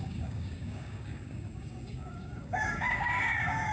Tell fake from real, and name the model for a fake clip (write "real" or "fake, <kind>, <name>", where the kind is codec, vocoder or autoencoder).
fake, codec, DAC